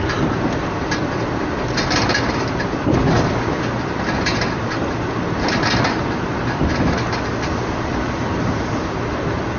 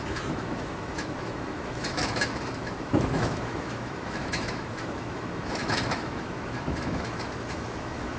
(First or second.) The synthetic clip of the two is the second